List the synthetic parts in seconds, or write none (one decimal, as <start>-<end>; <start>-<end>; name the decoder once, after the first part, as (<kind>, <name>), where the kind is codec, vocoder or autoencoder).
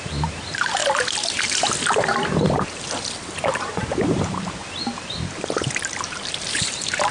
0.0-0.8 (vocoder, BigVGAN v2); 3.6-4.6; 5.4-7.1